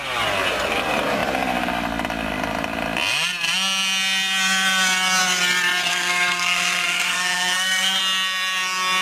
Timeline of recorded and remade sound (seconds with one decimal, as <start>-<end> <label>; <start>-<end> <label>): 0.0-5.9 recorded; 5.9-8.0 remade; 8.0-9.0 recorded